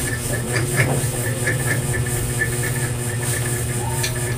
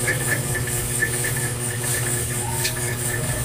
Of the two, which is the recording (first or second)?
first